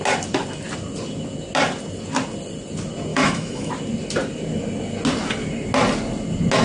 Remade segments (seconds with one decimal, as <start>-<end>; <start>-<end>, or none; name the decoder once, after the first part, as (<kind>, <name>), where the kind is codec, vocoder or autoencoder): 3.1-3.7 (autoencoder, DAC-VAE)